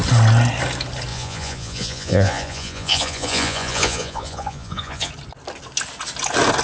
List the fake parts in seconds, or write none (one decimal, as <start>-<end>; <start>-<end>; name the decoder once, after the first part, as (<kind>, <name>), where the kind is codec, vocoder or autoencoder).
1.1-5.1 (vocoder, Vocos)